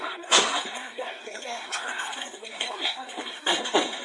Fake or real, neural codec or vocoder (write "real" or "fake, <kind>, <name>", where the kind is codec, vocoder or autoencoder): fake, codec, SNAC